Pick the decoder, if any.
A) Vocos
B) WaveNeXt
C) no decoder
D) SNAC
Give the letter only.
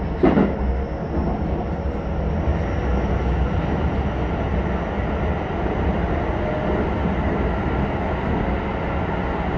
C